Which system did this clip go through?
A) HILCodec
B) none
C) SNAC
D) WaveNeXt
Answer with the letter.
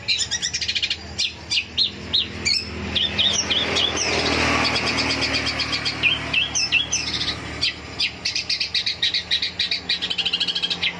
B